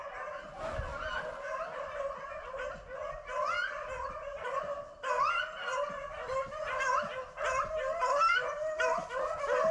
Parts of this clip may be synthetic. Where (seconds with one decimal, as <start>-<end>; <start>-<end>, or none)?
none